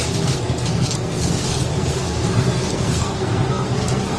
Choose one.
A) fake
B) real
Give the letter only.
A